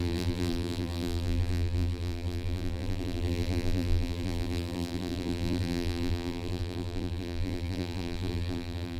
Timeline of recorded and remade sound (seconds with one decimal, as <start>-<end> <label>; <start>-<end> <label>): 0.0-9.0 remade